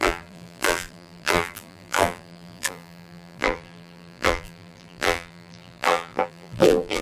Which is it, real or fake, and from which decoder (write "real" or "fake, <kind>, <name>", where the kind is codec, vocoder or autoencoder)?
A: fake, vocoder, BigVGAN v2